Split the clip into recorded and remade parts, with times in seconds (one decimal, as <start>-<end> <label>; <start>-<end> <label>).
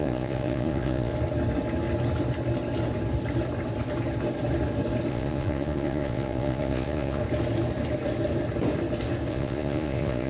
0.0-1.1 remade; 1.1-5.1 recorded; 5.1-7.2 remade; 7.2-9.3 recorded; 9.3-10.3 remade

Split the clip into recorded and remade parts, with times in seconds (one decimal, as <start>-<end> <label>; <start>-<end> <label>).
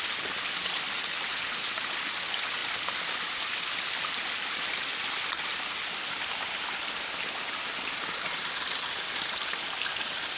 0.0-10.4 recorded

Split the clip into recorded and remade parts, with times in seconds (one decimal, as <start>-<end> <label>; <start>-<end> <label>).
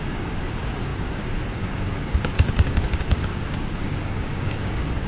0.0-5.1 remade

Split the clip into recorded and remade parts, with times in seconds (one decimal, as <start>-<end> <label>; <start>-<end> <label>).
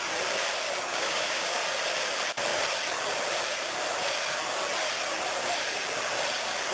0.0-0.9 recorded; 0.9-1.6 remade; 1.6-6.7 recorded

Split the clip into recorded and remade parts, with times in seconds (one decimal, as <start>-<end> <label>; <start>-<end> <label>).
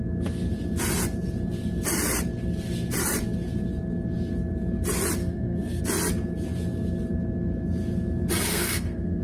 0.0-5.2 recorded; 5.2-5.8 remade; 5.8-8.5 recorded; 8.5-9.2 remade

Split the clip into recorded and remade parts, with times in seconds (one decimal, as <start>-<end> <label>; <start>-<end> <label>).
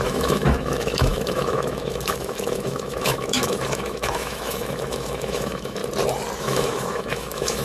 0.0-5.8 remade; 5.8-6.4 recorded; 6.4-7.6 remade